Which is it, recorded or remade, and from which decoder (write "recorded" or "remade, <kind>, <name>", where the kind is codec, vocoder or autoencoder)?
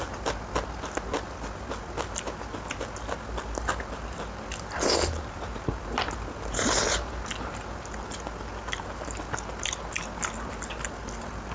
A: recorded